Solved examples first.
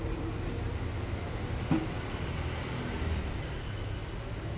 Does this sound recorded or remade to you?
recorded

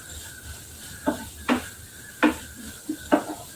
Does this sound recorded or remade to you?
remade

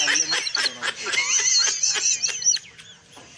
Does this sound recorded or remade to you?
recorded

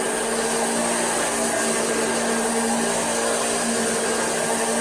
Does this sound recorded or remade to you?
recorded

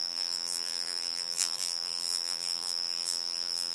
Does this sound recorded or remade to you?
remade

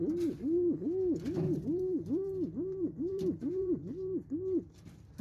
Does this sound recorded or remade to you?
remade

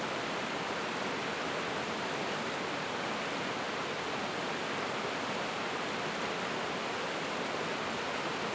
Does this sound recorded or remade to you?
recorded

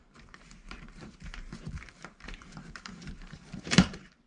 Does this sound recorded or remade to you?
remade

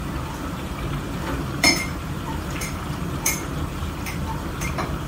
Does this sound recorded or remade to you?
remade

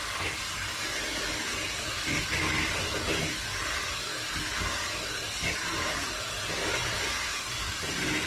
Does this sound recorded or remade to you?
recorded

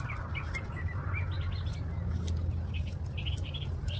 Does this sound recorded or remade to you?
recorded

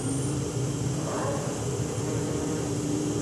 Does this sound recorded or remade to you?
remade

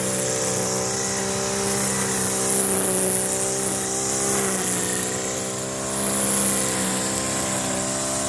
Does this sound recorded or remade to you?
recorded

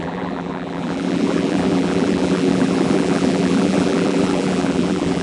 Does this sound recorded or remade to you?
remade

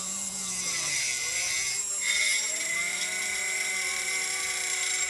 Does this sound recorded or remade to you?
remade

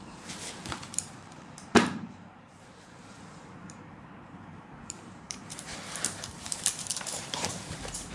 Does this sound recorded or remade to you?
remade